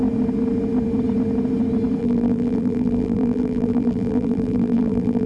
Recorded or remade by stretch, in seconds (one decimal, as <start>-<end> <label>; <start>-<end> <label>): 0.0-2.0 recorded; 2.0-5.3 remade